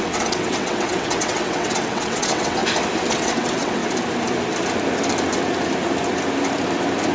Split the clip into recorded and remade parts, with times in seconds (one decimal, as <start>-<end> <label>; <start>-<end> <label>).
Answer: 0.0-2.6 remade; 2.6-3.1 recorded; 3.1-3.8 remade; 3.8-7.1 recorded